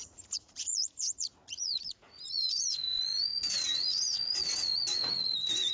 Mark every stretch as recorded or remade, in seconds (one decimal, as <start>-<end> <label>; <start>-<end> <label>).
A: 0.0-5.7 remade

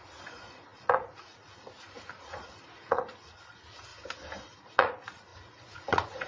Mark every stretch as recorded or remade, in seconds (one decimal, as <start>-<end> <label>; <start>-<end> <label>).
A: 0.0-3.9 remade; 3.9-4.4 recorded; 4.4-6.3 remade

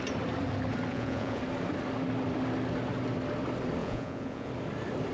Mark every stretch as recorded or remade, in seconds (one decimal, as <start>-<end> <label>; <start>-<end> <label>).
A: 0.0-0.9 recorded; 0.9-1.4 remade; 1.4-3.8 recorded; 3.8-4.5 remade; 4.5-5.1 recorded

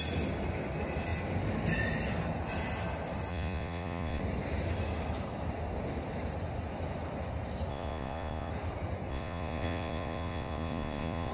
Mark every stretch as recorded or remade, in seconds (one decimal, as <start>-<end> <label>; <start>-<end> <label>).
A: 0.0-3.3 recorded; 3.3-4.2 remade; 4.2-7.7 recorded; 7.7-8.5 remade; 8.5-9.1 recorded; 9.1-11.3 remade

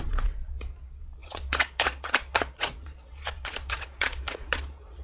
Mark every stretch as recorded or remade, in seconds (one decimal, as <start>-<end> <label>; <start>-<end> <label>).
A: 0.0-5.0 remade

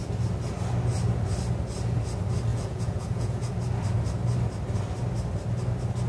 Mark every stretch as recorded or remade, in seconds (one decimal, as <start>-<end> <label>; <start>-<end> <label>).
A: 0.0-2.5 recorded; 2.5-3.5 remade; 3.5-6.1 recorded